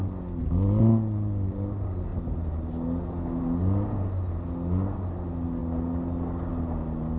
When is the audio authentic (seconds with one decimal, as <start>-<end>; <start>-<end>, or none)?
0.0-7.2

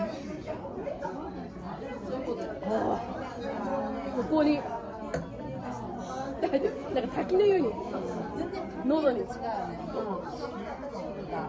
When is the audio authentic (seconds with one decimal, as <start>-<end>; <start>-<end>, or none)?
0.0-6.8; 10.3-11.5

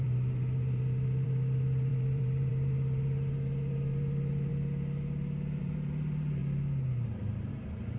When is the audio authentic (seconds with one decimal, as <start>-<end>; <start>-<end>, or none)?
4.5-5.6; 6.4-7.5